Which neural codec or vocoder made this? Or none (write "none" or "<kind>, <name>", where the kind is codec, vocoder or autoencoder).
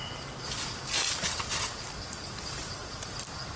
none